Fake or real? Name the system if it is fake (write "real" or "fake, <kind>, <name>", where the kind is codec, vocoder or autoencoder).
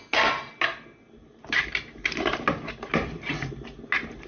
real